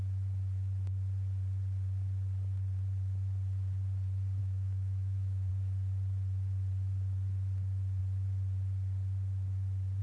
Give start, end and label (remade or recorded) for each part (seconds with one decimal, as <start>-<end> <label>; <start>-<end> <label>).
0.0-4.4 recorded; 4.4-5.5 remade; 5.5-10.0 recorded